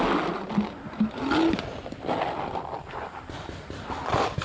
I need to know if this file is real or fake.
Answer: real